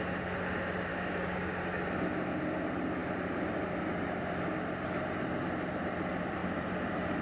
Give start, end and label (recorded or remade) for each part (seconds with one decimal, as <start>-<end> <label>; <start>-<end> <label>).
0.0-0.9 recorded; 0.9-1.5 remade; 1.5-7.2 recorded